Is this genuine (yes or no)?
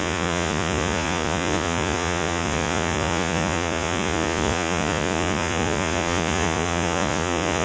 no